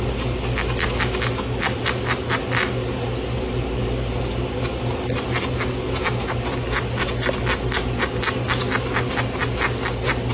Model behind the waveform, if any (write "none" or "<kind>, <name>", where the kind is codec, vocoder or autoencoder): none